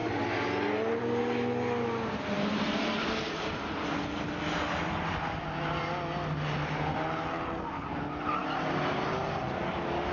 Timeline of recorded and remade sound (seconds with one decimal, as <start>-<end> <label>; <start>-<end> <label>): 0.0-10.1 recorded